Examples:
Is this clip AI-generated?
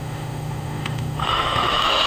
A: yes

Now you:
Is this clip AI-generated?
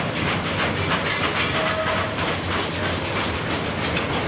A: no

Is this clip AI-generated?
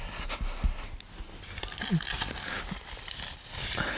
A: no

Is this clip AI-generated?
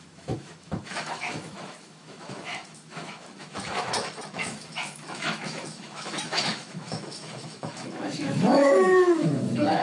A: yes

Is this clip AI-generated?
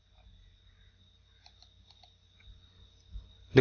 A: no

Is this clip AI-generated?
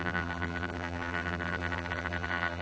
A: yes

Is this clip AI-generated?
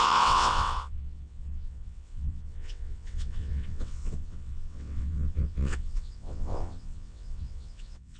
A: yes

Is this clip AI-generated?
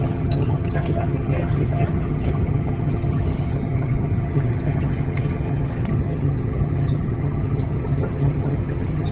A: yes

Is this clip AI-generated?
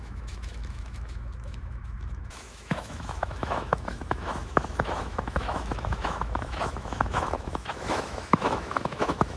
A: yes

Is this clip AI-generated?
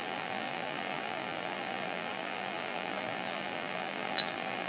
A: yes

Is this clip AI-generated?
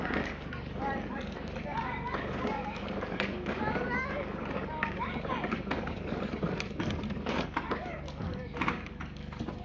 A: yes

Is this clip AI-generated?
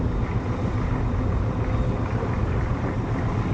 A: no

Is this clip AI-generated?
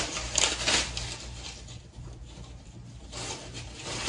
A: no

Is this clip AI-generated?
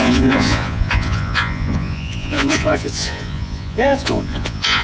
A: yes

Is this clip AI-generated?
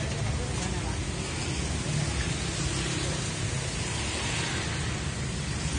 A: no